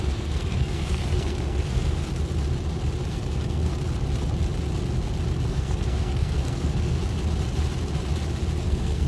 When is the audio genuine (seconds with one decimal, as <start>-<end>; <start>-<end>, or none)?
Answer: 2.0-3.1; 3.7-5.5; 7.0-8.6